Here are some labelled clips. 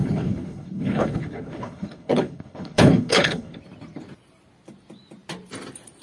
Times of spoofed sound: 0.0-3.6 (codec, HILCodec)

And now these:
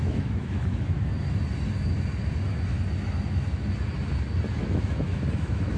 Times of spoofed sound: 0.0-1.1 (autoencoder, DAC-VAE); 4.6-5.8